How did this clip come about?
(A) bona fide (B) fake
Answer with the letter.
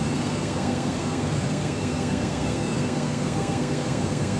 B